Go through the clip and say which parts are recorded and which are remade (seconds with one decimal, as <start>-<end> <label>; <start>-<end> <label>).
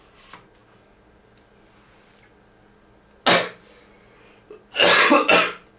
0.0-5.8 recorded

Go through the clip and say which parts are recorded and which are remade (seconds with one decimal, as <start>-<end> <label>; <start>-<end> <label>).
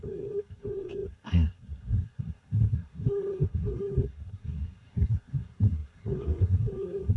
0.0-7.2 remade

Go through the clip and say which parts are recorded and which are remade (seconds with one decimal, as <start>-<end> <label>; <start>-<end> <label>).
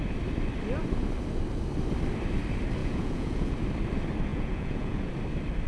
0.0-2.8 recorded; 2.8-3.5 remade; 3.5-4.3 recorded; 4.3-5.1 remade; 5.1-5.7 recorded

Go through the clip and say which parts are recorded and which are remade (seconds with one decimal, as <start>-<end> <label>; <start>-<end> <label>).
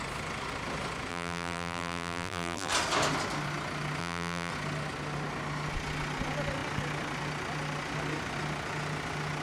0.0-1.1 recorded; 1.1-2.7 remade; 2.7-4.0 recorded; 4.0-4.5 remade; 4.5-9.4 recorded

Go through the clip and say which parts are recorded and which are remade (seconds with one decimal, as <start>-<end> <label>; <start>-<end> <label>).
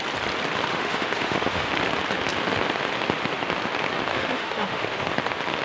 0.0-0.7 recorded; 0.7-1.7 remade; 1.7-4.1 recorded; 4.1-5.1 remade; 5.1-5.6 recorded